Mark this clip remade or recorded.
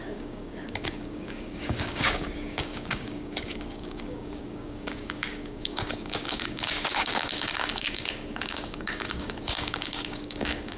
remade